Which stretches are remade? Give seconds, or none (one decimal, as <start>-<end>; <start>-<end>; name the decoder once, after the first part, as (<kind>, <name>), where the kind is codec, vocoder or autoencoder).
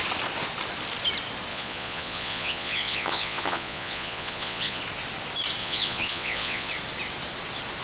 1.5-4.8 (vocoder, Vocos); 5.6-6.7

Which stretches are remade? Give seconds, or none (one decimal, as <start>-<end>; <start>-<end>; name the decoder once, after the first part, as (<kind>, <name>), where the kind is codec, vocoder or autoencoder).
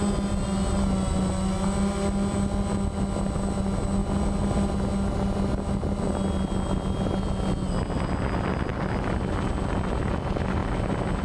none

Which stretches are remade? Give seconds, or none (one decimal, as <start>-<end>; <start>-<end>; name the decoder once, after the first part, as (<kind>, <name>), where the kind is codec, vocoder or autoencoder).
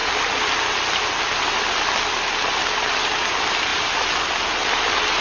none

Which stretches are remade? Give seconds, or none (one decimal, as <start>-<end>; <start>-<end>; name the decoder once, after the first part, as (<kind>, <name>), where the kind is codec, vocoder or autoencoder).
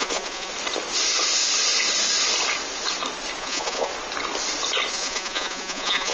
0.0-0.5 (vocoder, Vocos); 3.4-3.9; 4.9-6.1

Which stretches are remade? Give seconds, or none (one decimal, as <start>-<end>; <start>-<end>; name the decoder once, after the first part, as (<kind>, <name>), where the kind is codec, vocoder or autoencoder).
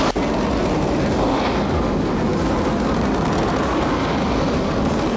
none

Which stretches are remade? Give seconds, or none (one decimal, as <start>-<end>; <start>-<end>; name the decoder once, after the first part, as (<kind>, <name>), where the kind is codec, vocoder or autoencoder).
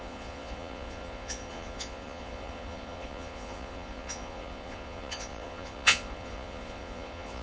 0.0-7.4 (vocoder, Vocos)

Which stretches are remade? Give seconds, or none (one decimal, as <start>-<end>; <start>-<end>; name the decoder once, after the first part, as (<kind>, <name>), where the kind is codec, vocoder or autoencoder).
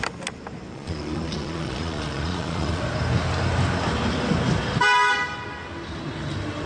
0.7-2.8 (vocoder, Vocos)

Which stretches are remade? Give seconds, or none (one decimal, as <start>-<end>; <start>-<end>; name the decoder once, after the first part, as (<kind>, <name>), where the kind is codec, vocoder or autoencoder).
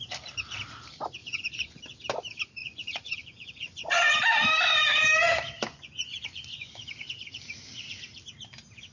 1.2-1.8 (vocoder, Vocos); 2.6-4.1; 5.7-6.7